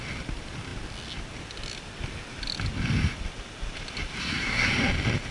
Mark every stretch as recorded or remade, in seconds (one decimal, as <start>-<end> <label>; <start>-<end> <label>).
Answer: 0.0-4.2 recorded; 4.2-4.7 remade; 4.7-5.3 recorded